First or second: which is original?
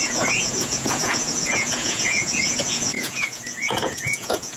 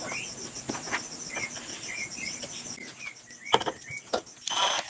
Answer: second